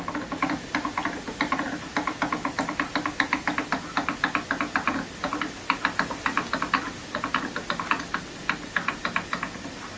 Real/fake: real